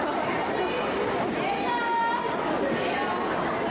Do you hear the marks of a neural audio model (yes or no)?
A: no